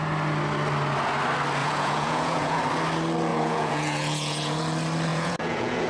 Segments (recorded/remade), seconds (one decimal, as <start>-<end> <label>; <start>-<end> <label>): 0.0-1.6 recorded; 1.6-2.6 remade; 2.6-3.3 recorded; 3.3-4.6 remade; 4.6-5.1 recorded; 5.1-5.9 remade